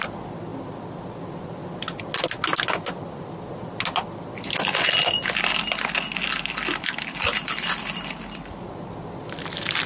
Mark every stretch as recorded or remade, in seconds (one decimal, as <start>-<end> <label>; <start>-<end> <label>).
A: 0.0-9.9 recorded

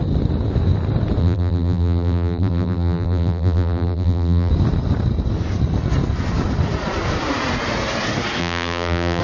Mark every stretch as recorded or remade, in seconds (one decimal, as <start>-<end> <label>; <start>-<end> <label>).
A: 0.0-1.2 recorded; 1.2-4.5 remade; 4.5-8.4 recorded; 8.4-9.2 remade